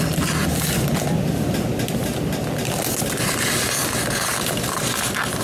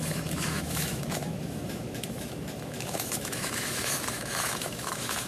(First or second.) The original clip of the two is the first